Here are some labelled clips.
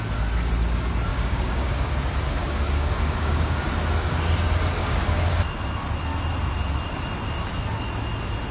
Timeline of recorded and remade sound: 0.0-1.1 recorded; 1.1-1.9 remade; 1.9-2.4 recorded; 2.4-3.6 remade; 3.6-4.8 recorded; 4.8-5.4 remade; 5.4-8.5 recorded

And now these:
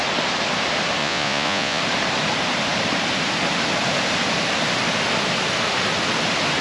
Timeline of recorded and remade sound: 0.0-1.0 recorded; 1.0-1.8 remade; 1.8-6.6 recorded

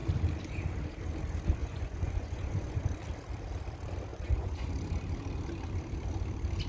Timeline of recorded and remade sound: 0.0-1.6 recorded; 1.6-2.8 remade; 2.8-4.1 recorded; 4.1-4.7 remade; 4.7-6.7 recorded

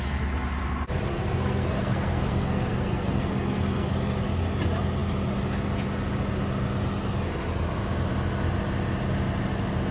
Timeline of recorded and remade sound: 0.0-1.1 recorded; 1.1-3.9 remade; 3.9-9.9 recorded

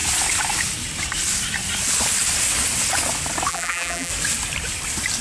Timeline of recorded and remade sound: 0.0-3.5 recorded; 3.5-4.1 remade; 4.1-5.2 recorded

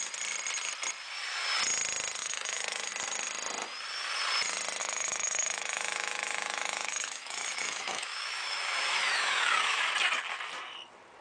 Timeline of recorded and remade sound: 0.0-2.2 recorded; 2.2-2.9 remade; 2.9-4.8 recorded; 4.8-9.9 remade; 9.9-11.2 recorded

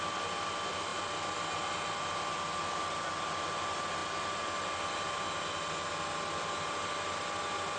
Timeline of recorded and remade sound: 0.0-7.8 recorded